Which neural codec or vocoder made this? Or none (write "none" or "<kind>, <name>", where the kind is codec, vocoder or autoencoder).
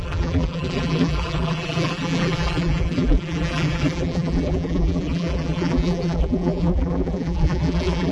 vocoder, BigVGAN v2